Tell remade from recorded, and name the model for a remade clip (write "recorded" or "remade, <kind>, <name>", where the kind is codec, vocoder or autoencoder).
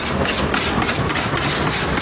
recorded